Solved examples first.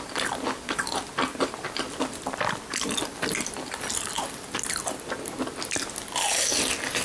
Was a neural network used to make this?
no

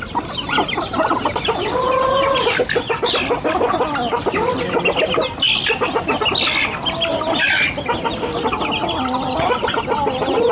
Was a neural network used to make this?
no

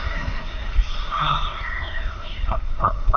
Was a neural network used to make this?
yes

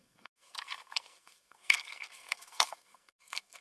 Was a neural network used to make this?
yes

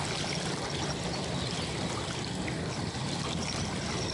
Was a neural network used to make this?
no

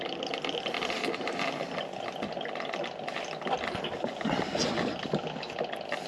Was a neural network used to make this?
no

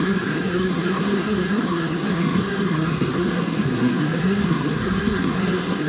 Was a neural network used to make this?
yes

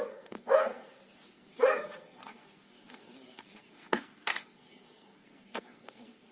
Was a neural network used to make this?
yes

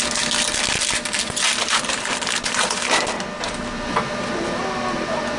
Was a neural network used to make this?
no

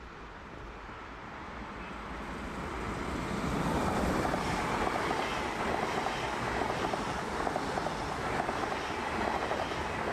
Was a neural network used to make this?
no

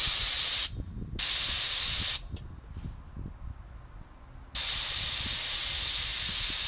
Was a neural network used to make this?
no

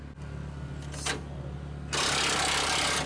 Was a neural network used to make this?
no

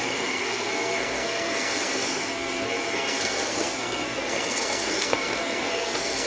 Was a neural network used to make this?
yes